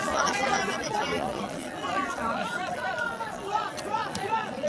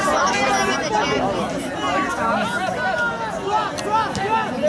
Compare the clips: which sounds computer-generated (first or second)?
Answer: first